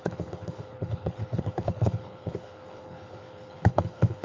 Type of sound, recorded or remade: remade